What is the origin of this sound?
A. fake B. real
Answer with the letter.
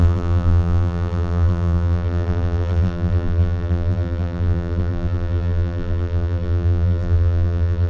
A